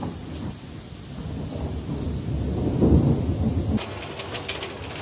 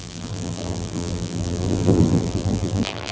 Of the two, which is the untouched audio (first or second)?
first